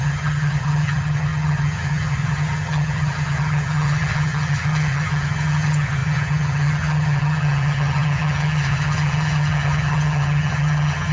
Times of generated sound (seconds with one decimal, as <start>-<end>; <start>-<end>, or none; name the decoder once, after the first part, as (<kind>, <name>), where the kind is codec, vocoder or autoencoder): 0.0-11.1 (vocoder, HiFi-GAN)